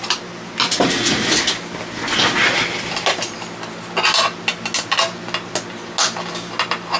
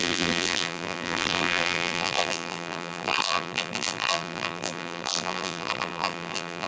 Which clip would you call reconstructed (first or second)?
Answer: second